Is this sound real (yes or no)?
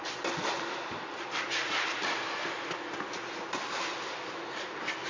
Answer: yes